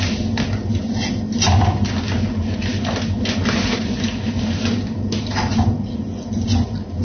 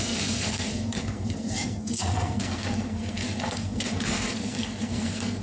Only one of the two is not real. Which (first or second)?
second